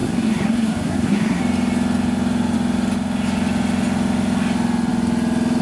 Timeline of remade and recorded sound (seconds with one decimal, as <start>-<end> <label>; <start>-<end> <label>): 0.0-1.4 remade; 1.4-5.6 recorded